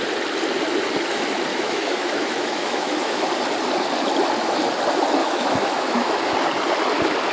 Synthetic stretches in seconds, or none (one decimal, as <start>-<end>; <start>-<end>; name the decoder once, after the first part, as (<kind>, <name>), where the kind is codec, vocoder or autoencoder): 1.5-3.3 (autoencoder, DAC-VAE); 5.2-6.2